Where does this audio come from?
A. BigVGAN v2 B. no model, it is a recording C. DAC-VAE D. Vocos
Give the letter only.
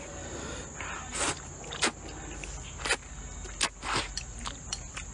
B